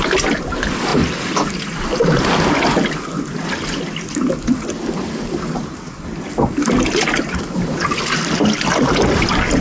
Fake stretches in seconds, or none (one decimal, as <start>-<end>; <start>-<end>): none